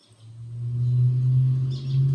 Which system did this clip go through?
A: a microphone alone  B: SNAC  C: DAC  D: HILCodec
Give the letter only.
A